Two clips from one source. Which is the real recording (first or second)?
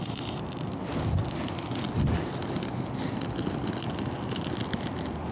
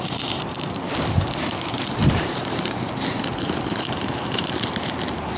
first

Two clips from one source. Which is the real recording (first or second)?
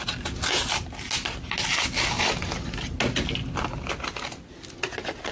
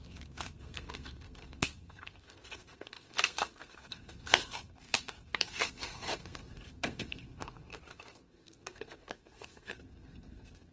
first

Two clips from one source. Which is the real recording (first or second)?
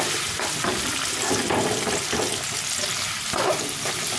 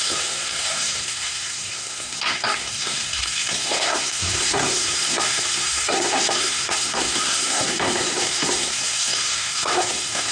first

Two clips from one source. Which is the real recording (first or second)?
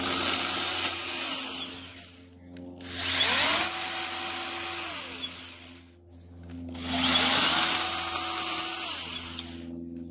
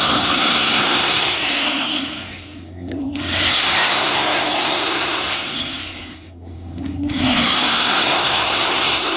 first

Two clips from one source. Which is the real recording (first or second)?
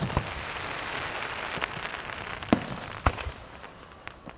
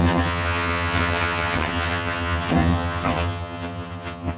first